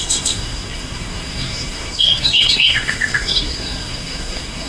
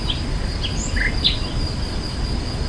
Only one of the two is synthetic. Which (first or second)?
first